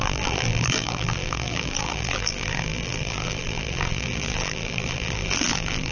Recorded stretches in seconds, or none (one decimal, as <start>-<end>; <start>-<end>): none